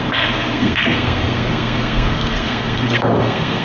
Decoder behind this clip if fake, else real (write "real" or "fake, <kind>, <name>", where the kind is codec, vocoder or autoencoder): fake, codec, SNAC